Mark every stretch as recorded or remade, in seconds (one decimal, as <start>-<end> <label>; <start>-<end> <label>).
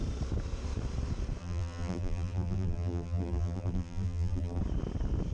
0.0-1.4 recorded; 1.4-4.6 remade; 4.6-5.3 recorded